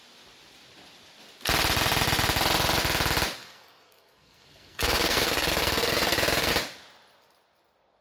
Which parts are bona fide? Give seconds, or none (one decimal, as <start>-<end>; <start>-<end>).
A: 0.0-3.4; 6.5-8.0